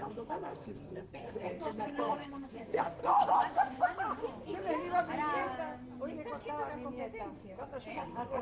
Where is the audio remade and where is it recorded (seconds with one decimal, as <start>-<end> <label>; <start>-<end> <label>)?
0.0-3.0 remade; 3.0-7.9 recorded; 7.9-8.4 remade